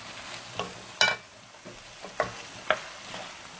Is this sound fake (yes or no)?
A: no